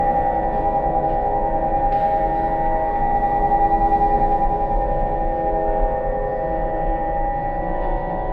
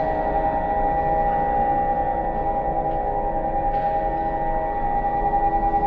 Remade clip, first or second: first